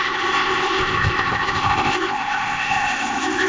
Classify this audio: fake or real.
fake